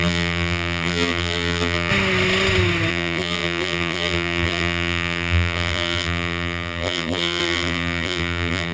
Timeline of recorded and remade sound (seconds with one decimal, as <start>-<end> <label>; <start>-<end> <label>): 0.0-1.9 remade; 1.9-2.9 recorded; 2.9-8.7 remade